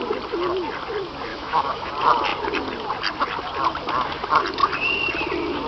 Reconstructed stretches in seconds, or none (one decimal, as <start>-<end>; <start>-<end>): 1.3-1.9